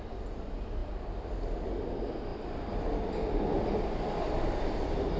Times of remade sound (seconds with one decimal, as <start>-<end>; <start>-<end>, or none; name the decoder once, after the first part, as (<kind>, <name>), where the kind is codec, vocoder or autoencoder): none